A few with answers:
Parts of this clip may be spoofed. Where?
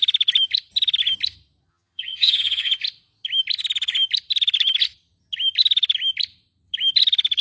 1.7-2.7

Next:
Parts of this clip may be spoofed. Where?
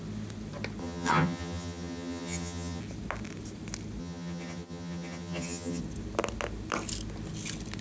0.8-2.8; 4.0-5.8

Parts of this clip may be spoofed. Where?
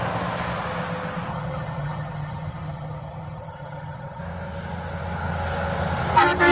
1.3-4.2